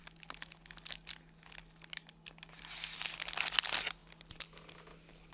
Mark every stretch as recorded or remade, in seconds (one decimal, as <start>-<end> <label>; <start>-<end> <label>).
0.0-5.3 recorded